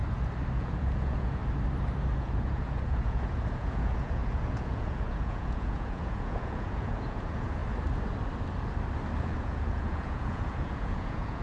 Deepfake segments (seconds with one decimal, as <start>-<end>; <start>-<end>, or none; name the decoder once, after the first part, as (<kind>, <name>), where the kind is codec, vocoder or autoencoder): 0.6-1.4 (vocoder, Vocos); 2.2-7.6; 9.2-11.4